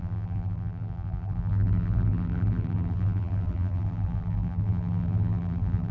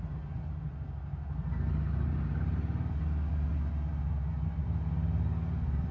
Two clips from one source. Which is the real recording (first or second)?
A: second